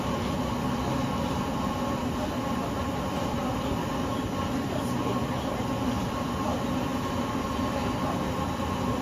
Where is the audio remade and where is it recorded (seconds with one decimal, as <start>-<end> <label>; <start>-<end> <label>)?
0.0-9.0 recorded